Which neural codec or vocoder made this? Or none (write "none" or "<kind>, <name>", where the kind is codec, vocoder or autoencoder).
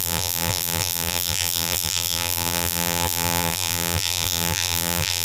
vocoder, BigVGAN v2